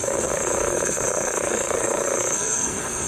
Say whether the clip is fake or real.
fake